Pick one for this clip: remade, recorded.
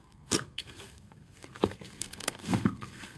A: remade